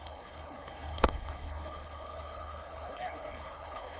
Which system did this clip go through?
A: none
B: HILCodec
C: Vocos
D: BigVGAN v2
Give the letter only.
B